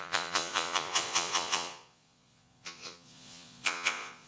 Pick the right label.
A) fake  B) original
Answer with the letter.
A